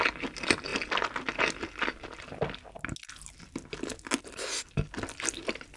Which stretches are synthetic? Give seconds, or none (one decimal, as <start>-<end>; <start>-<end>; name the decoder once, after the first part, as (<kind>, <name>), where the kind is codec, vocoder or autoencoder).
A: none